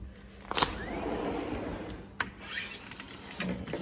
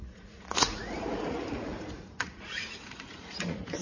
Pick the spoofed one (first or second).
second